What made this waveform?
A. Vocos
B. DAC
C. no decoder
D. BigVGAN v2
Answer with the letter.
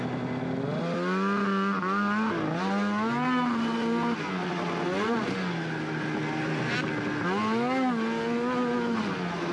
C